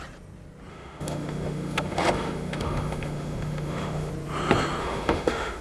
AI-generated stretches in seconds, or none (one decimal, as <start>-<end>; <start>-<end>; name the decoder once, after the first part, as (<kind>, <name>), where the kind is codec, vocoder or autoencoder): 0.7-4.1 (autoencoder, DAC-VAE); 4.8-5.6